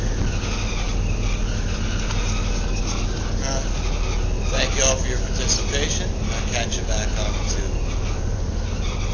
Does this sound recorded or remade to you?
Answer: recorded